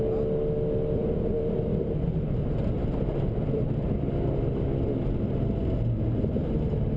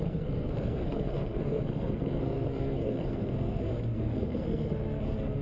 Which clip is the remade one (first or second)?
second